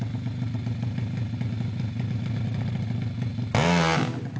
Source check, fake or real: real